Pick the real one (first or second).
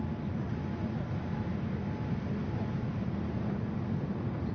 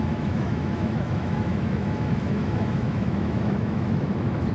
first